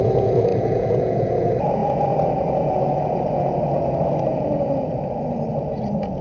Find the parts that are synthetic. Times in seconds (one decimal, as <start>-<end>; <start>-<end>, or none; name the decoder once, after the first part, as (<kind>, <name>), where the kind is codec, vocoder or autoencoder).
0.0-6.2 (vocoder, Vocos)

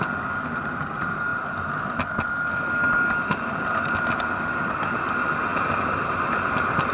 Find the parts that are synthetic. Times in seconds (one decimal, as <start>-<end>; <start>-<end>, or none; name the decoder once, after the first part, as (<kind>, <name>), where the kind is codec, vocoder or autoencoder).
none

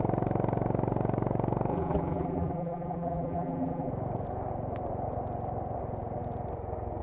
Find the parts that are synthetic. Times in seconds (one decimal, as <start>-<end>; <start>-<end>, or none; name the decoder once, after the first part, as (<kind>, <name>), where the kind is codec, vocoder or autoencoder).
1.7-3.9 (vocoder, BigVGAN v2)

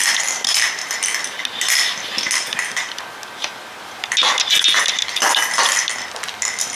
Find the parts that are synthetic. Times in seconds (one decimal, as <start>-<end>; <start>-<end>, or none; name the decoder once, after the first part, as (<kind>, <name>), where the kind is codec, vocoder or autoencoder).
none

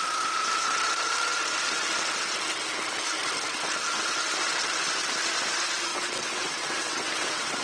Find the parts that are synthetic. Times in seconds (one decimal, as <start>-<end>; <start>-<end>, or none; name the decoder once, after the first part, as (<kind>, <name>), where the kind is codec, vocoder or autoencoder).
5.9-7.6 (vocoder, WaveNeXt)